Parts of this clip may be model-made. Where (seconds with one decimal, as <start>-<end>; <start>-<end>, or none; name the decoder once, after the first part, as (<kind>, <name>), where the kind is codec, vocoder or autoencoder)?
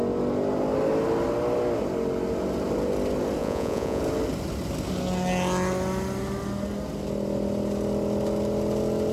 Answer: 3.4-4.0 (vocoder, Vocos)